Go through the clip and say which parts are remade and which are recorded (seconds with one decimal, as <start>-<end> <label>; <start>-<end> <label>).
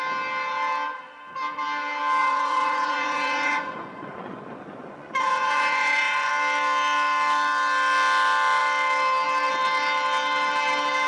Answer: 0.0-2.2 recorded; 2.2-6.3 remade; 6.3-11.1 recorded